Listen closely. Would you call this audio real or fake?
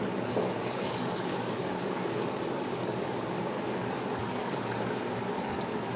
fake